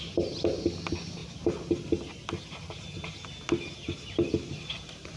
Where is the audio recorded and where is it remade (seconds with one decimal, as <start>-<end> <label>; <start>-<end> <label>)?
0.0-5.2 recorded